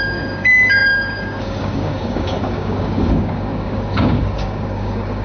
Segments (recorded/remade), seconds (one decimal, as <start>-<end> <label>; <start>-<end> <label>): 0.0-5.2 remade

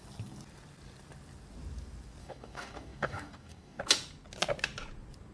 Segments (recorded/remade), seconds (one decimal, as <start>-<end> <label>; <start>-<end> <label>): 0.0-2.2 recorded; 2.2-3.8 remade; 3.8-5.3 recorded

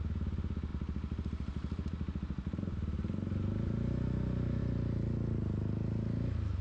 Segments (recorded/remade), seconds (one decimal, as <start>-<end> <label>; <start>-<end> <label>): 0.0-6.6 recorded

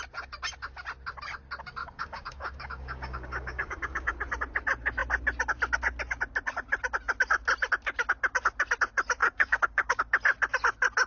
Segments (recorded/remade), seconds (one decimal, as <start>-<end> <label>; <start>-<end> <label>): 0.0-1.8 recorded; 1.8-4.1 remade; 4.1-9.2 recorded; 9.2-10.0 remade; 10.0-11.1 recorded

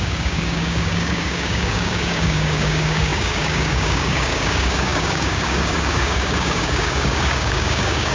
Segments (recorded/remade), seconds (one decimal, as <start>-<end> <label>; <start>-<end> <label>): 0.0-8.1 remade